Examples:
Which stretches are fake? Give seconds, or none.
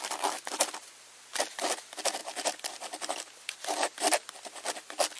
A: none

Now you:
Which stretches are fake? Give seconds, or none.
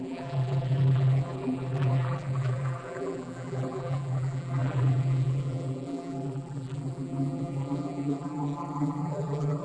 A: 0.0-9.6 (vocoder, BigVGAN v2)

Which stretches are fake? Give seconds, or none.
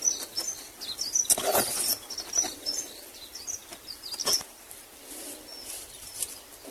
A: none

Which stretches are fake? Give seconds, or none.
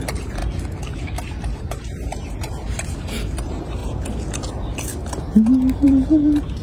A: 0.0-0.4 (vocoder, BigVGAN v2); 1.4-3.8; 5.2-6.6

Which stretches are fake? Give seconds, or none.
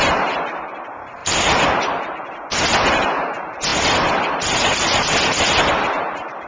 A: 1.2-1.7 (vocoder, BigVGAN v2); 3.7-5.4